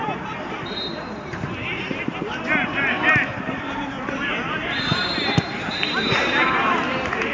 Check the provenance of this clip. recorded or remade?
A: remade